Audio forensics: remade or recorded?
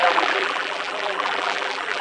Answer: remade